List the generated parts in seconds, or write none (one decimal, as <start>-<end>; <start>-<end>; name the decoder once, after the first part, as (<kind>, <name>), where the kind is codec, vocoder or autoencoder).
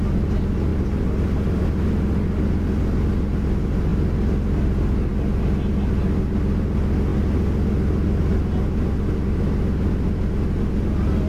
0.7-1.6 (vocoder, BigVGAN v2)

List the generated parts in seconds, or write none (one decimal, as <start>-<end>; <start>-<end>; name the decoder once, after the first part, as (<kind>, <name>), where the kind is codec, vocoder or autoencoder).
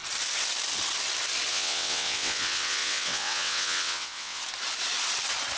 1.5-4.4 (vocoder, WaveNeXt)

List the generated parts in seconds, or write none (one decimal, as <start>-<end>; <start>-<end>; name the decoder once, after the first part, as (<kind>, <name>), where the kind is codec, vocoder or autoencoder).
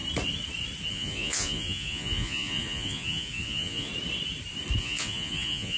0.9-3.9 (vocoder, Vocos); 4.8-5.8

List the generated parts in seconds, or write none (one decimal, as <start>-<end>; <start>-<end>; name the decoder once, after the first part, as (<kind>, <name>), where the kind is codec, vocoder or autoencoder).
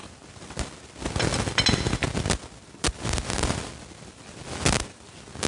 none